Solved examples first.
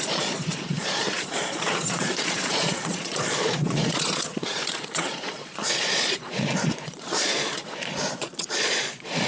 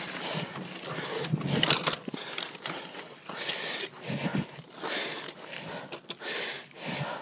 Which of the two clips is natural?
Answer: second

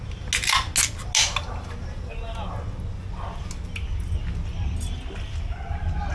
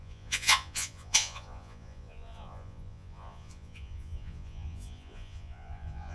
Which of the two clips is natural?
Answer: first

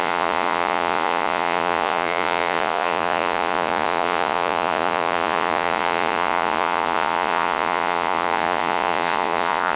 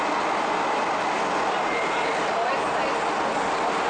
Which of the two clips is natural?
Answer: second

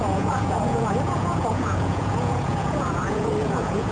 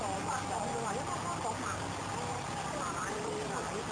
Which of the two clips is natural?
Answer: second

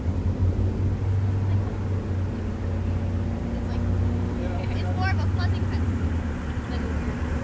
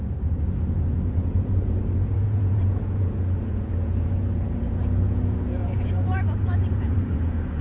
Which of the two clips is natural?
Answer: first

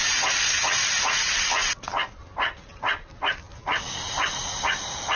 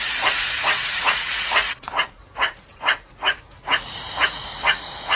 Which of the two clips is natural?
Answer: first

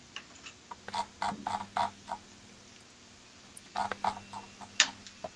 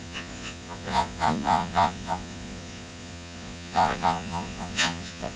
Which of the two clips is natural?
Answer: first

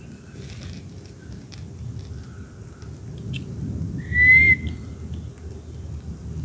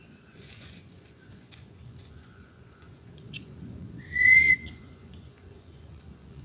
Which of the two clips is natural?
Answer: first